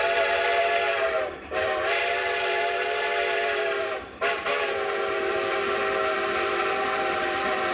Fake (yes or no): yes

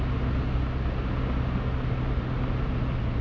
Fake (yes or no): no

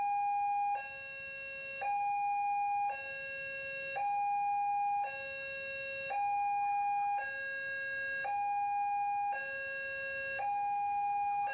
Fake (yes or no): no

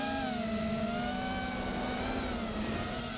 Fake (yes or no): no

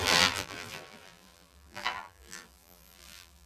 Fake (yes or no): yes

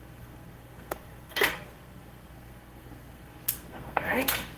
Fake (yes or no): yes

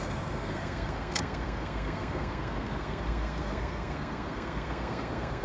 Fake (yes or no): yes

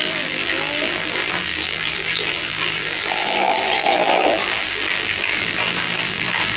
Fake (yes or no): yes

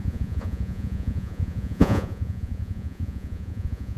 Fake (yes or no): yes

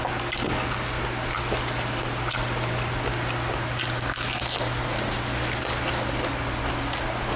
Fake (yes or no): no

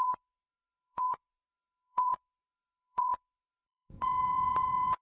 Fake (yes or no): yes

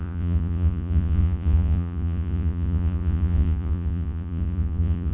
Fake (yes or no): yes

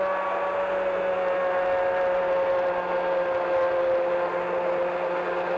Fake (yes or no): no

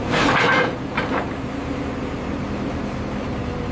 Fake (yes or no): no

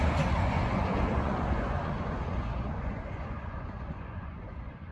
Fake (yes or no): yes